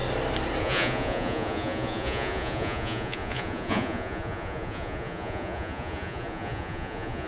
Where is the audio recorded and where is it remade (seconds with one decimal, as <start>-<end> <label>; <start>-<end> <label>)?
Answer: 0.0-0.6 recorded; 0.6-7.3 remade